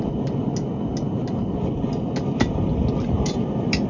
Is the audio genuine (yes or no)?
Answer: yes